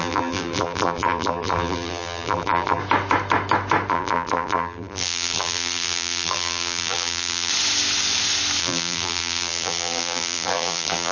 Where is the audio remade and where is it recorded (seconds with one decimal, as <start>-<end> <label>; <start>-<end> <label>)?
0.0-2.8 remade; 2.8-3.9 recorded; 3.9-7.5 remade; 7.5-8.6 recorded; 8.6-11.1 remade